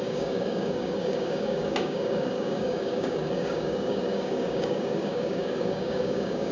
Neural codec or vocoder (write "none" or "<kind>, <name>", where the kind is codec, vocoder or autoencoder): codec, DAC